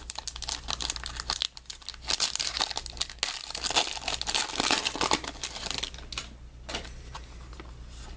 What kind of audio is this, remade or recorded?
recorded